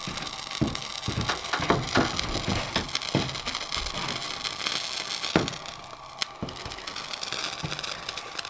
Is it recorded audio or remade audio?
recorded